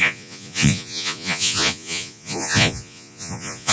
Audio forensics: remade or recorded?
remade